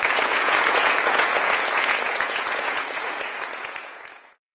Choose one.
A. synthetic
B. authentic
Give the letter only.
A